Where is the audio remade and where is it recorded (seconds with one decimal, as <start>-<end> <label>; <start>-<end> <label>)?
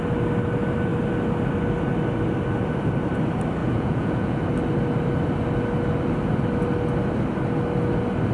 0.0-3.6 recorded; 3.6-4.4 remade; 4.4-8.3 recorded